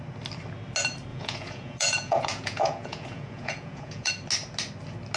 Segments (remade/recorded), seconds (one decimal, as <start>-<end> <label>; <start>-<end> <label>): 0.0-1.1 recorded; 1.1-4.1 remade; 4.1-5.2 recorded